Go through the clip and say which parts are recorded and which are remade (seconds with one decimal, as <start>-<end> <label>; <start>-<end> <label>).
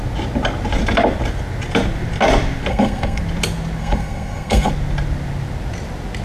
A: 0.0-2.7 recorded; 2.7-3.2 remade; 3.2-3.8 recorded; 3.8-4.7 remade; 4.7-6.2 recorded